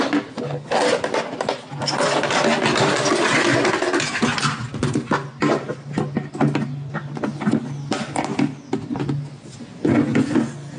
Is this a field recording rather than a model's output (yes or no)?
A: yes